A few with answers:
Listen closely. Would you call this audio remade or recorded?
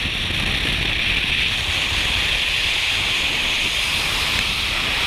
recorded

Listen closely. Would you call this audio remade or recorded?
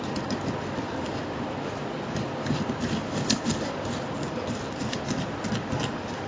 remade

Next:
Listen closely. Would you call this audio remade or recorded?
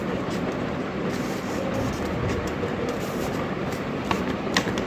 remade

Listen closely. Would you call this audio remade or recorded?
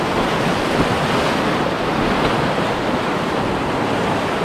recorded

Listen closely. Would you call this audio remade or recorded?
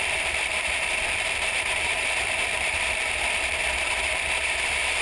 remade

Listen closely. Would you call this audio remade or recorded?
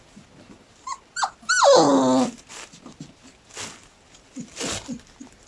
recorded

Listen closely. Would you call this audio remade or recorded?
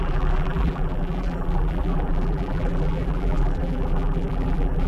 remade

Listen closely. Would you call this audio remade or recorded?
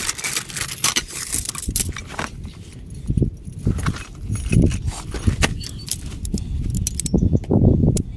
recorded